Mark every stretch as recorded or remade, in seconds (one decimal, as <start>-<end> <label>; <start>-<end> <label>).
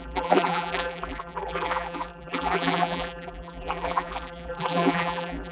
0.0-5.5 remade